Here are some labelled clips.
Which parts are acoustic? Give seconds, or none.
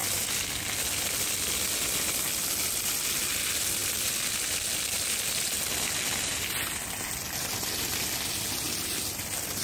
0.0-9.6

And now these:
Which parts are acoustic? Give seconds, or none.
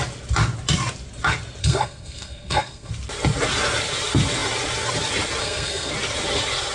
0.0-1.6; 2.9-5.4; 5.9-6.7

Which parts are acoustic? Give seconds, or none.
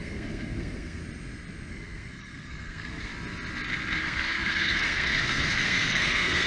1.0-1.7; 3.1-4.0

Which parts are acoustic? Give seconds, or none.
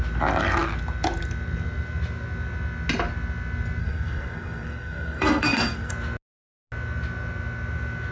0.0-3.8; 5.9-8.1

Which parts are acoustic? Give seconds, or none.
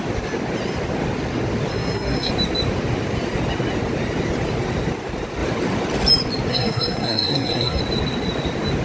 0.0-1.7; 2.3-6.5; 7.8-8.8